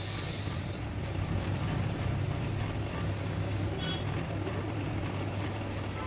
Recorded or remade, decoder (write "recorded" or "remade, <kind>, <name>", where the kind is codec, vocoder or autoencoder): recorded